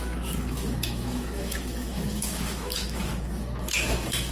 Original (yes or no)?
no